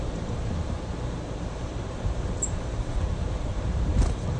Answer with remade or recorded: remade